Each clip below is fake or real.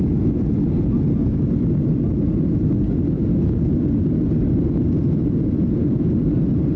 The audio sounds real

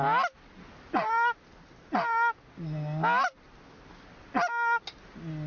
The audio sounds real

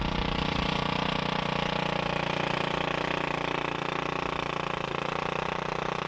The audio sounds real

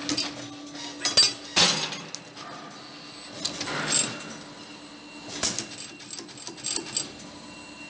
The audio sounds real